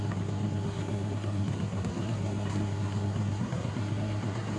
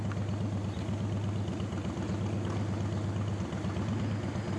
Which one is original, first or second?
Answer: second